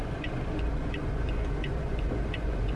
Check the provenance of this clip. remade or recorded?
remade